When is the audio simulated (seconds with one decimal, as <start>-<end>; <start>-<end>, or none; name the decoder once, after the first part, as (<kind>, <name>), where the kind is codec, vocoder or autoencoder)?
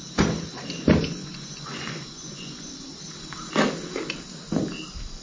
1.2-2.7 (vocoder, Vocos)